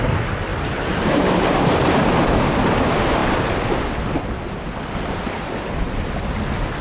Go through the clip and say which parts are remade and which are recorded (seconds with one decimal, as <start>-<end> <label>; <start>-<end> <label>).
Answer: 0.0-0.5 recorded; 0.5-2.4 remade; 2.4-6.8 recorded